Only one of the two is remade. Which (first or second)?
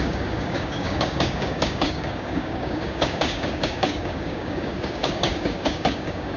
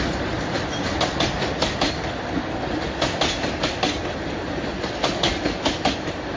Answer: first